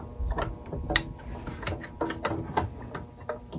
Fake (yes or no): no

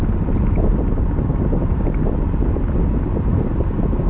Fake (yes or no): no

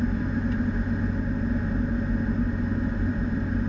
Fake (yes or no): no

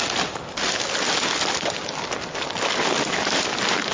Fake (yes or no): no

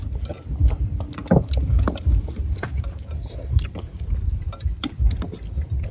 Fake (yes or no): no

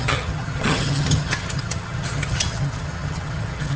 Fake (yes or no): yes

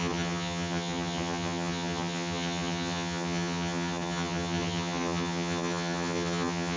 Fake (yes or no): yes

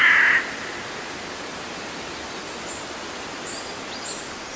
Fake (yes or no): no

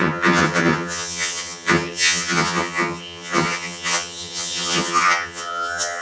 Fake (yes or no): yes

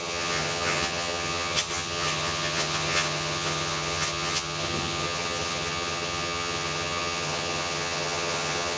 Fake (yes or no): yes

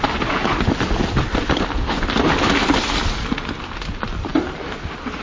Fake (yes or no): no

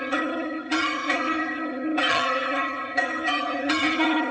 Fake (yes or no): yes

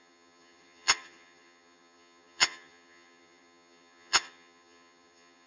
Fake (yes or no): yes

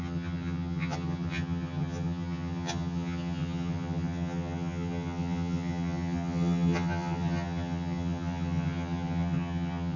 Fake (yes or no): yes